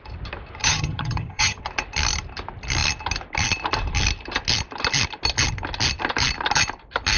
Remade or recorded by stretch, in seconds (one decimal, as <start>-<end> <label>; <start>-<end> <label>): 0.0-0.6 recorded; 0.6-1.6 remade; 1.6-7.2 recorded